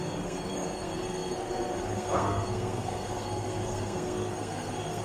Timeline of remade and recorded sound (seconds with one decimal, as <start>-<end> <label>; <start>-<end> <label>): 0.0-5.0 remade